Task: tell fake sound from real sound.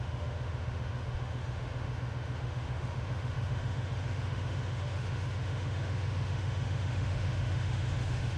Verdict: fake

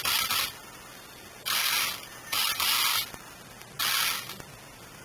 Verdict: real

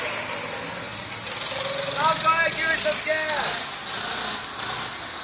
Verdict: real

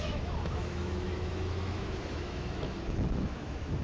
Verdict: fake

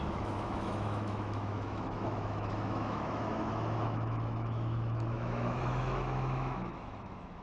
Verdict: fake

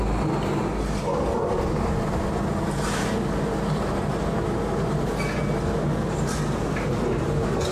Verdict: real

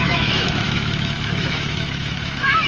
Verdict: fake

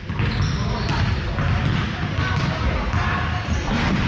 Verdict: real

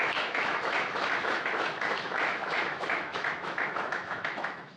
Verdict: fake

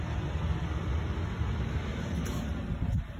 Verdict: real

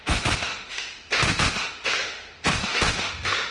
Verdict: fake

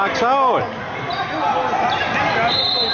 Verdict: real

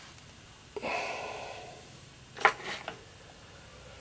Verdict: real